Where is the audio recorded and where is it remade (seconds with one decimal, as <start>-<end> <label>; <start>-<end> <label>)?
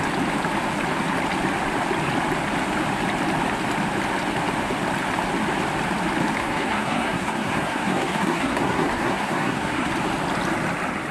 0.0-6.4 recorded; 6.4-9.9 remade; 9.9-11.1 recorded